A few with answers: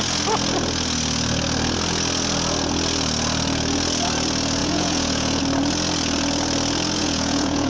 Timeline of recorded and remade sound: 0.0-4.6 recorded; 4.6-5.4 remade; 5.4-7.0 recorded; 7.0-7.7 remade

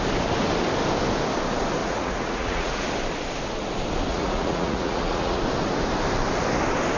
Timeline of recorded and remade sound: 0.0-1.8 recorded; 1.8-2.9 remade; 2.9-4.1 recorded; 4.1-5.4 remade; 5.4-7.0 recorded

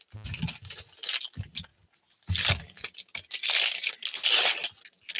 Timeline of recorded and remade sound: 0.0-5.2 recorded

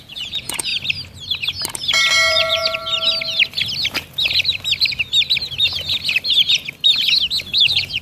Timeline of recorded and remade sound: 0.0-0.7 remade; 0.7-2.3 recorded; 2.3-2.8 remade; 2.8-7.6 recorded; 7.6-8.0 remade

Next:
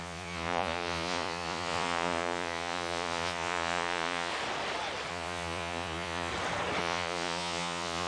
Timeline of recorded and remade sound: 0.0-4.3 remade; 4.3-5.1 recorded; 5.1-6.3 remade; 6.3-6.8 recorded; 6.8-8.1 remade

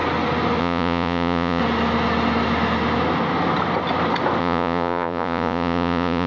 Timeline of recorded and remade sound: 0.0-0.6 recorded; 0.6-1.6 remade; 1.6-4.4 recorded; 4.4-6.3 remade